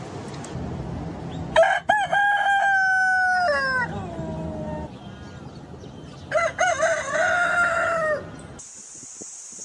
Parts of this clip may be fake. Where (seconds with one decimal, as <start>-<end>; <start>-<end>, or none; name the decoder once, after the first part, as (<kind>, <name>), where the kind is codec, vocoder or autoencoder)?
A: none

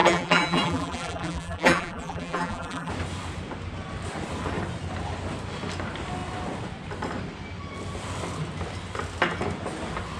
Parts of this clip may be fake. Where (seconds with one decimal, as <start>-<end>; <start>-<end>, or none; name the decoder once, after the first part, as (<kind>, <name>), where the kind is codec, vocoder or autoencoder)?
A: 0.0-2.9 (vocoder, BigVGAN v2)

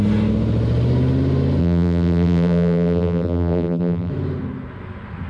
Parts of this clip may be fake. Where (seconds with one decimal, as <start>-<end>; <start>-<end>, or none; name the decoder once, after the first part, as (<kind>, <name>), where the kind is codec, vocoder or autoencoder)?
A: 1.6-4.1 (vocoder, BigVGAN v2)

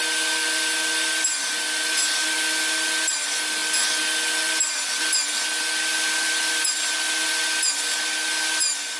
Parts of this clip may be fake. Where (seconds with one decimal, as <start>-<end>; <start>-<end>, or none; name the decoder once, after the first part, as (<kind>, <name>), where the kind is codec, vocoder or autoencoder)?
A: none

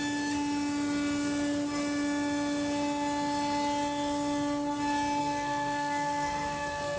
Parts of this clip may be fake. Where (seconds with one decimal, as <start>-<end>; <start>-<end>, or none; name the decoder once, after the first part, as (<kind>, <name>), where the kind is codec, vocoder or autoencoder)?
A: 5.2-7.0 (codec, SNAC)

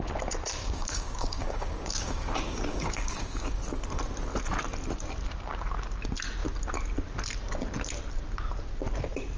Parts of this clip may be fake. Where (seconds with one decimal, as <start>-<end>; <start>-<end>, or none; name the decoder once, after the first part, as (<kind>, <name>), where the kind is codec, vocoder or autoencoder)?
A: 0.6-3.6 (codec, DAC)

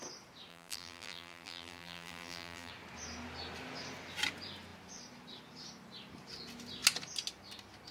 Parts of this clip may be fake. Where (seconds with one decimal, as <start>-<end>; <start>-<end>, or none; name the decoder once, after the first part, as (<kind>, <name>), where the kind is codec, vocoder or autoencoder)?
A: 0.5-2.7 (vocoder, BigVGAN v2)